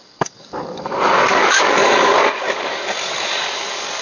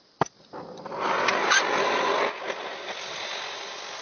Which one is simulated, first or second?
first